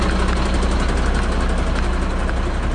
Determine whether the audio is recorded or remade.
recorded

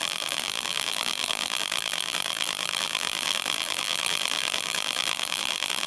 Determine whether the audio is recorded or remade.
remade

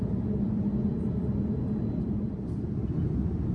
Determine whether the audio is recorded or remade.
recorded